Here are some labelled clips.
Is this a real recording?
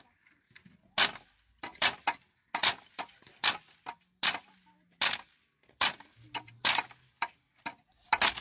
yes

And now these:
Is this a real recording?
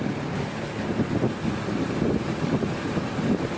yes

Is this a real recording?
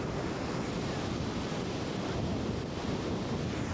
yes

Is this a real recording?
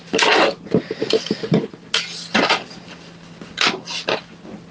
yes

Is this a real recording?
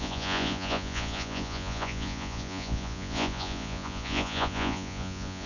no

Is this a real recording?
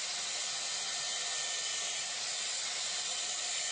yes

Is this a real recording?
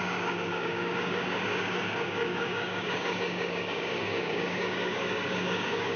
no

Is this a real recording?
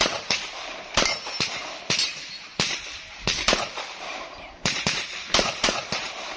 no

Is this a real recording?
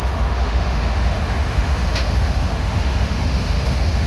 no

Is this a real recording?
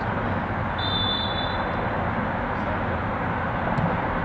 yes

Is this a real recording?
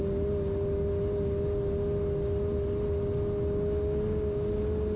yes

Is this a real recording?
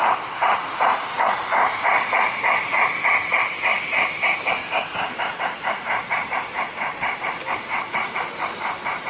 no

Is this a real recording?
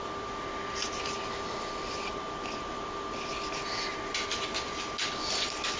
yes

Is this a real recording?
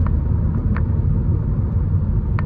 yes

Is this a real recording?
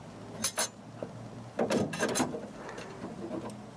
yes